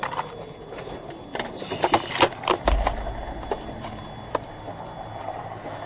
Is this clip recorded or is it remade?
recorded